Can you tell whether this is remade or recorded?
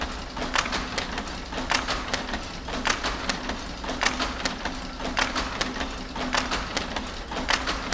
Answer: recorded